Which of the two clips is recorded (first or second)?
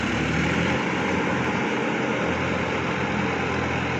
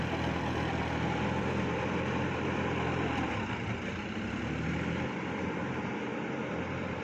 first